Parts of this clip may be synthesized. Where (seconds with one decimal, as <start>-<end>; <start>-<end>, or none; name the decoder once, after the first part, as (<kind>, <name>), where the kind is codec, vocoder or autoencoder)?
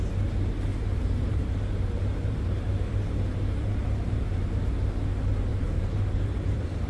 0.7-4.6 (vocoder, BigVGAN v2); 5.5-6.9